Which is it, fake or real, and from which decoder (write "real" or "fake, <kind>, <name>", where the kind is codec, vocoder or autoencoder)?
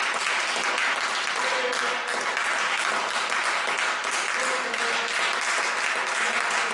real